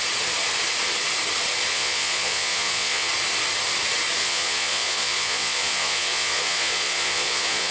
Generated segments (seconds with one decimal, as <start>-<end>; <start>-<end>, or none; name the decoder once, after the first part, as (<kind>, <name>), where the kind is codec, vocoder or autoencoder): 1.7-3.1 (vocoder, Vocos); 4.2-7.7